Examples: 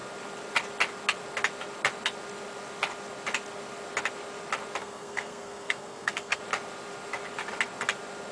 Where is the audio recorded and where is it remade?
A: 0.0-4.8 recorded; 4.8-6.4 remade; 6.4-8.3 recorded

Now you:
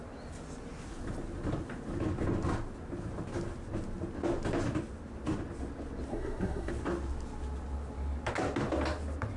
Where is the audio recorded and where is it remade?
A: 0.0-6.1 recorded; 6.1-6.7 remade; 6.7-9.4 recorded

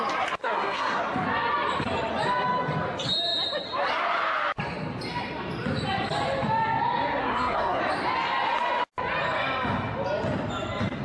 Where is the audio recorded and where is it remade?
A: 0.0-0.4 recorded; 0.4-1.0 remade; 1.0-7.2 recorded; 7.2-7.8 remade; 7.8-11.0 recorded

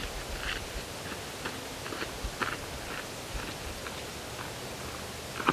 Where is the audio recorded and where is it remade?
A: 0.0-5.5 recorded

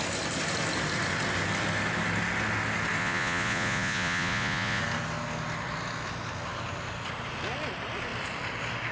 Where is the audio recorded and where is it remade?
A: 0.0-3.0 recorded; 3.0-4.8 remade; 4.8-8.9 recorded